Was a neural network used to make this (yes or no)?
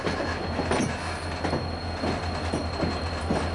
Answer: no